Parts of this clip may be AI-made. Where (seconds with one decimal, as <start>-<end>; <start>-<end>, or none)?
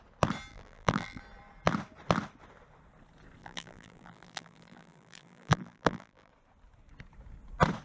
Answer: 0.5-1.2; 3.4-6.3